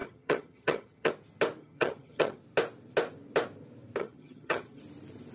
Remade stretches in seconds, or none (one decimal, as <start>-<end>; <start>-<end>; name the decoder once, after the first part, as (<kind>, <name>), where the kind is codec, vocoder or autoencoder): 0.0-1.1 (vocoder, HiFi-GAN); 1.6-2.4; 4.0-4.8

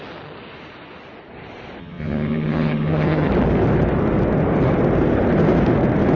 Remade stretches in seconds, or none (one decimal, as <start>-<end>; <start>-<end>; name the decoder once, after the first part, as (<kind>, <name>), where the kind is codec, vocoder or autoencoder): 1.8-3.3 (vocoder, HiFi-GAN)